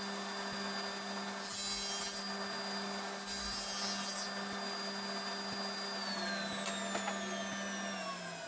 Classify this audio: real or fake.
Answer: real